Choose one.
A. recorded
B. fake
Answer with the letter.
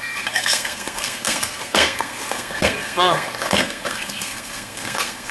B